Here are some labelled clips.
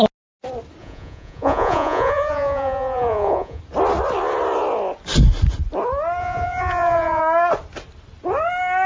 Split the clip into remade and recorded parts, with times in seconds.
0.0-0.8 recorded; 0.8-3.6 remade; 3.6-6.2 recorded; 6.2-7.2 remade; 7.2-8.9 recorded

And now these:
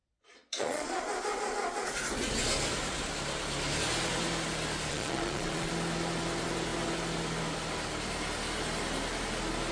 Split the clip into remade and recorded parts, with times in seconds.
0.0-1.0 remade; 1.0-4.9 recorded; 4.9-5.7 remade; 5.7-9.7 recorded

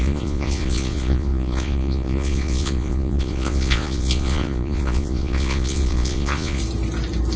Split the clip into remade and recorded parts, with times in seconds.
0.0-6.6 remade; 6.6-7.4 recorded

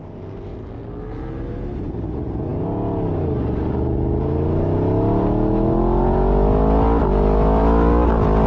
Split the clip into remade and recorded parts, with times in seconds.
0.0-8.5 recorded

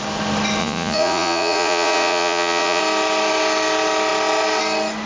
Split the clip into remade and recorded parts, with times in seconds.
0.0-0.6 recorded; 0.6-2.8 remade; 2.8-5.1 recorded

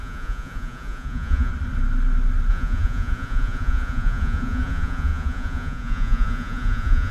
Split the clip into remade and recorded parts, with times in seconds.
0.0-1.5 remade; 1.5-2.5 recorded; 2.5-7.1 remade

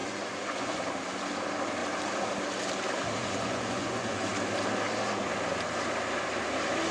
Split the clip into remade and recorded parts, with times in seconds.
0.0-0.8 remade; 0.8-3.2 recorded; 3.2-4.3 remade; 4.3-6.9 recorded